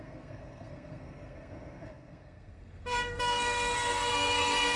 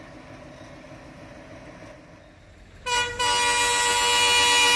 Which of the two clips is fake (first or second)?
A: first